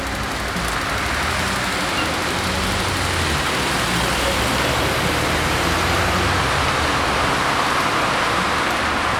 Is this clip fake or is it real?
real